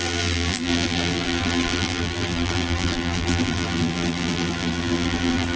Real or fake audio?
fake